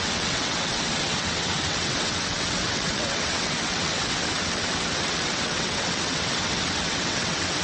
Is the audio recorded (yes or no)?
no